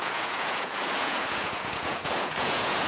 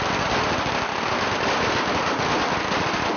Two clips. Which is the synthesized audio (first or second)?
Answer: first